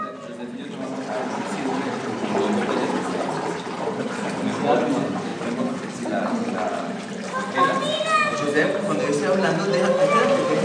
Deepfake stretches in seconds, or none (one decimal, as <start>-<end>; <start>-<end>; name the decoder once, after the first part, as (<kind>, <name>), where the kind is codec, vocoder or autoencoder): none